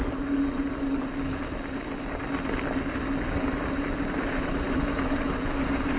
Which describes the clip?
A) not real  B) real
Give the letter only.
B